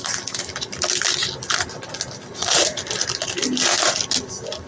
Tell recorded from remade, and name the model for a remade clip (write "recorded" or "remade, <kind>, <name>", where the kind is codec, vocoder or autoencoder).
recorded